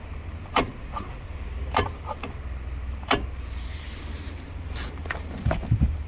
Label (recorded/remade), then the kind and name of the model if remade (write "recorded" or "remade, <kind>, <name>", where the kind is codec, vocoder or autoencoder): remade, vocoder, BigVGAN v2